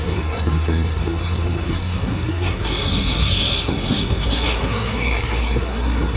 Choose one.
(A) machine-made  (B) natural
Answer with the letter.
A